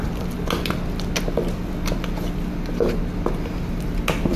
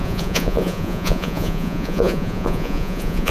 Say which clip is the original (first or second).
first